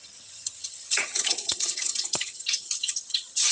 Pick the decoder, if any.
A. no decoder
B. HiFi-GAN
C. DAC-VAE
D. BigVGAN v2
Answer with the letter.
B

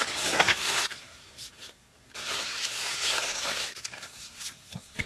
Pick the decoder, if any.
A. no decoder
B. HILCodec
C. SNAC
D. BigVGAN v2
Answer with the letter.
C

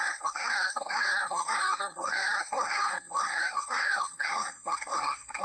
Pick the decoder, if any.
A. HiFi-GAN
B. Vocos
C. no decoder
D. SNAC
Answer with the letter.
D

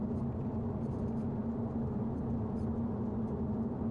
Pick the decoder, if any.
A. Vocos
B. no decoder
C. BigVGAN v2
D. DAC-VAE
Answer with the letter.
B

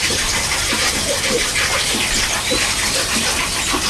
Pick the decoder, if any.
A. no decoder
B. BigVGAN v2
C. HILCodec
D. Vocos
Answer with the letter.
A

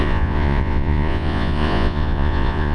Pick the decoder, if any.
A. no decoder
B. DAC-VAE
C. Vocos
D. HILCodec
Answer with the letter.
C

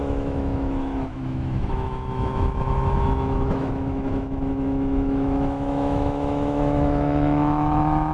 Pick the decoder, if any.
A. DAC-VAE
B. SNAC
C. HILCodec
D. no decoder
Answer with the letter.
A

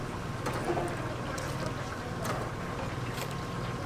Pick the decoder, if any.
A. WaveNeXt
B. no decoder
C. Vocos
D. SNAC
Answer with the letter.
B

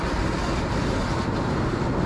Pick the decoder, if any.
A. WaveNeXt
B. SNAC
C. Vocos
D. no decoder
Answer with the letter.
D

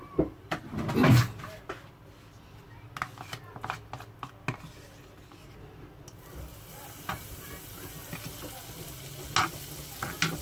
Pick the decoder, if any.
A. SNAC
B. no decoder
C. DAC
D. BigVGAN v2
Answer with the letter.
B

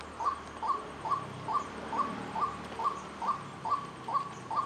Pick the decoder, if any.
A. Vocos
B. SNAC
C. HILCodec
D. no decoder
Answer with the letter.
D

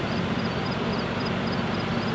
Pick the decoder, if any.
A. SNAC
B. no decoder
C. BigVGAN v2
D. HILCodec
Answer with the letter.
C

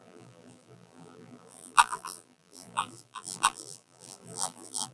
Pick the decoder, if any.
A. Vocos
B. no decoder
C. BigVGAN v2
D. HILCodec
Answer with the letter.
C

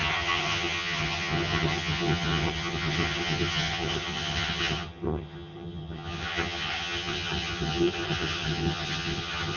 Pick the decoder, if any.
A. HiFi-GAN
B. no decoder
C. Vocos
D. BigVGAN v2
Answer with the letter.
A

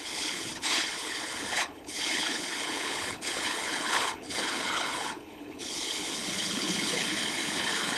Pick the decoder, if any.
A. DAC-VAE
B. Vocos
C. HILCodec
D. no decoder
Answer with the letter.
C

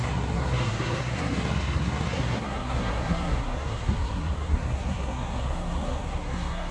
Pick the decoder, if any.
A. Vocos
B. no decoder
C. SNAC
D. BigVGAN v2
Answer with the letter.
C